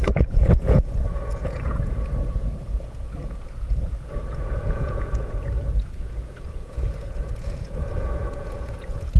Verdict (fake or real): fake